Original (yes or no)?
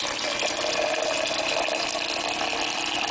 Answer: yes